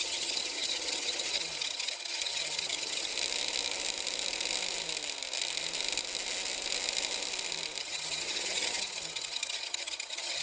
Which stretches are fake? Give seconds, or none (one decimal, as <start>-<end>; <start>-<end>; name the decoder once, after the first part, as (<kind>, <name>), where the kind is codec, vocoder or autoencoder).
0.0-3.1 (vocoder, HiFi-GAN); 7.8-10.4